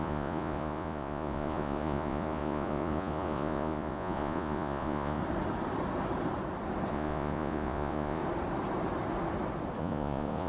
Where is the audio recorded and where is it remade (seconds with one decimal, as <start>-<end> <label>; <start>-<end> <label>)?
0.0-5.2 remade; 5.2-6.9 recorded; 6.9-8.2 remade; 8.2-9.8 recorded; 9.8-10.5 remade